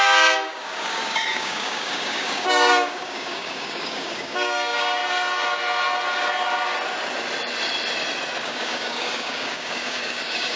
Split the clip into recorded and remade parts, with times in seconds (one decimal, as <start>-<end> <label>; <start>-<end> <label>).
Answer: 0.0-5.0 remade; 5.0-8.4 recorded; 8.4-10.6 remade